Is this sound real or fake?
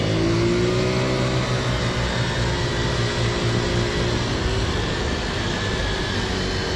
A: real